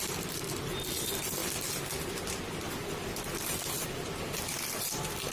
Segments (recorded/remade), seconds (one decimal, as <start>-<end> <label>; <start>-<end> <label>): 0.0-5.3 recorded